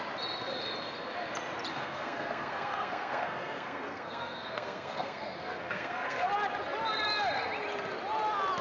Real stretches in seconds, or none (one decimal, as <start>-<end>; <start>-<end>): 0.0-1.7; 6.3-8.6

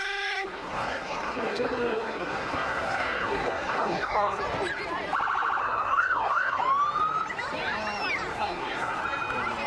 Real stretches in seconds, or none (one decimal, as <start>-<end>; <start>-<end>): 4.4-5.6; 6.6-8.3; 9.0-9.7

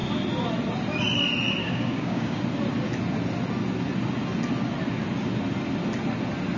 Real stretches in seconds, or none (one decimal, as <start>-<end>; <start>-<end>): 0.0-1.6; 2.4-6.6

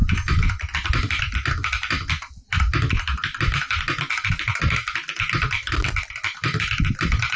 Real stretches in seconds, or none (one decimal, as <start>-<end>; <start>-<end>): 0.0-7.4